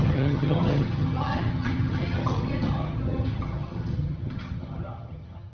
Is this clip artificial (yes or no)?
yes